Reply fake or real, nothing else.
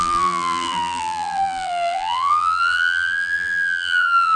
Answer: fake